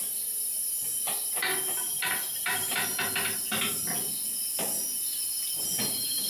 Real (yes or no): yes